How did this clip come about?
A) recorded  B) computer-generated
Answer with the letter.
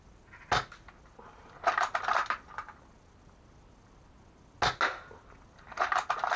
A